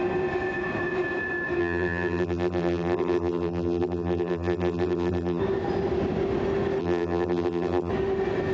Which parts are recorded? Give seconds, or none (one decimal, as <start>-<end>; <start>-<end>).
0.0-1.6; 5.4-6.8; 7.9-8.5